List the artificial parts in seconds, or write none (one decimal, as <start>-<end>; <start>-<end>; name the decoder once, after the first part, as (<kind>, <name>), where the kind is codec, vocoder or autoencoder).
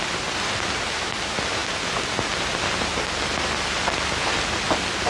none